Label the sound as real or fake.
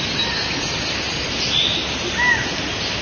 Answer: real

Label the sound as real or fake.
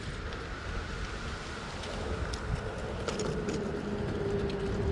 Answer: real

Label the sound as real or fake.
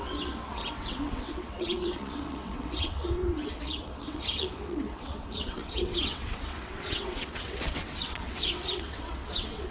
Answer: fake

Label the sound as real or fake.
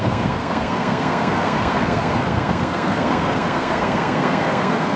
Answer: fake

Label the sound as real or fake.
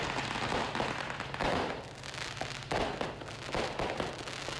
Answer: real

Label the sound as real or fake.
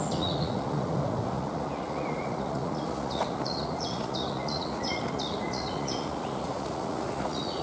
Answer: fake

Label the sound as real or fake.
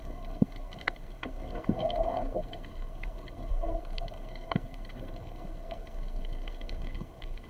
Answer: fake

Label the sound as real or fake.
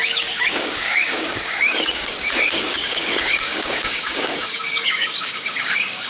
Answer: fake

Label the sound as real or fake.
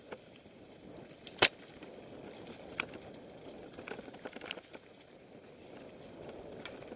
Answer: real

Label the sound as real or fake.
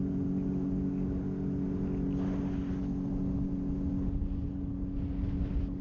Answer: real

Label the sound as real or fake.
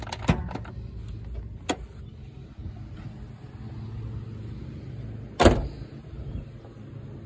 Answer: real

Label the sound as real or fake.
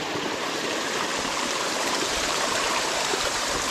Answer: fake